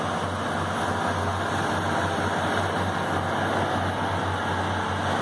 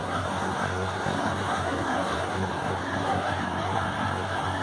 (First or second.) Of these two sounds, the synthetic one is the second